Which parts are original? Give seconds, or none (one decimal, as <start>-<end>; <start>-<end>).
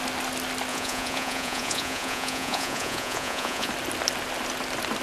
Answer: 0.0-0.7; 3.7-5.0